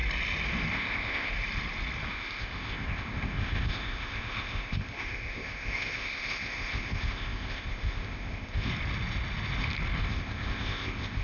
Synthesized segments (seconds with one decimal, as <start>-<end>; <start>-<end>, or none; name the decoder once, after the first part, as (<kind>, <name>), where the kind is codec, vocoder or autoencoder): 0.7-1.3 (codec, ZipCodec); 2.1-8.7; 10.0-11.2